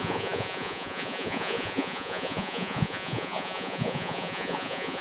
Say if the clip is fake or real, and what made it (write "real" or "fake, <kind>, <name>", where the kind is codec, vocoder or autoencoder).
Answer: fake, vocoder, Vocos